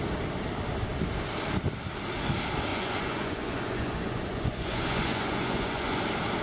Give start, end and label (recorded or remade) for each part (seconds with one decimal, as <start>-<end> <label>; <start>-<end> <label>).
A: 0.0-2.7 recorded; 2.7-6.0 remade; 6.0-6.4 recorded